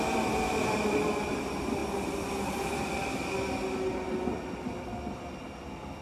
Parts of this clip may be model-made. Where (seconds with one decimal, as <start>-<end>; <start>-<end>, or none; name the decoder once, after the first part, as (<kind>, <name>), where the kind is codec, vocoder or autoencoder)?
none